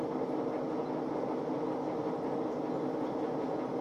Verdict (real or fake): real